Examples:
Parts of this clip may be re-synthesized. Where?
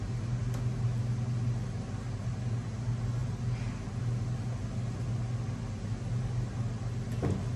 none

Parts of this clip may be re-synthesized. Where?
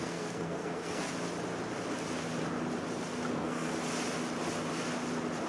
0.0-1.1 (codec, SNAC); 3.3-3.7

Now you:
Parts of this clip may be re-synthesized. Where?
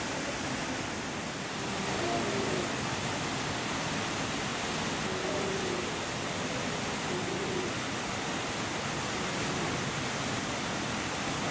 none